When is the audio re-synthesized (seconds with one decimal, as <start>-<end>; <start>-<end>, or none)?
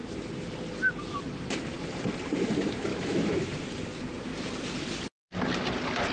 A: 2.9-3.5